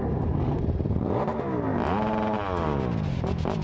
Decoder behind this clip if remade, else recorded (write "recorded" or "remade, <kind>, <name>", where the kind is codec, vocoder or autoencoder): recorded